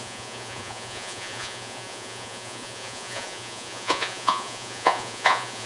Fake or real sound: fake